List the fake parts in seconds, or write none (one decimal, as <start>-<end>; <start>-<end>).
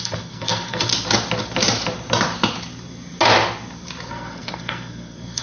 0.0-0.9; 4.1-5.4